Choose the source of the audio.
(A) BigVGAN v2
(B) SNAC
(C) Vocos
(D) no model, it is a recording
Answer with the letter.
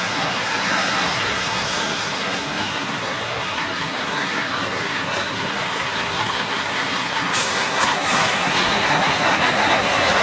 B